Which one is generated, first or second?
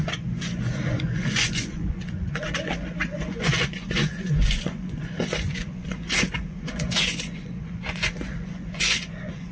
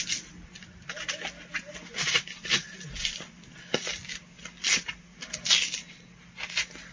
first